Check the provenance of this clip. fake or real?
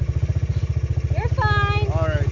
real